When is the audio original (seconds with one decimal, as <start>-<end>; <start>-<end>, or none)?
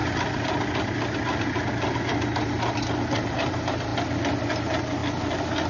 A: 0.0-3.2; 3.9-4.6; 5.0-5.7